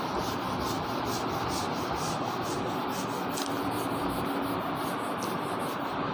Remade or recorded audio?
recorded